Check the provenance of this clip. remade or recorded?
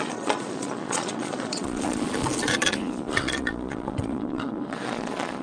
remade